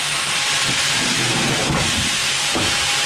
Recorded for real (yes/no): no